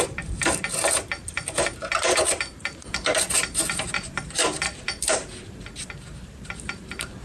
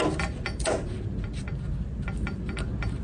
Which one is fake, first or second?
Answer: first